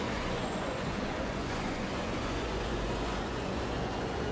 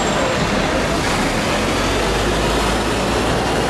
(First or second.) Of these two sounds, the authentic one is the second